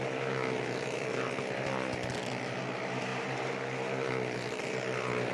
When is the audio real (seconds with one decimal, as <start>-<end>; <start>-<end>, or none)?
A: 0.0-5.3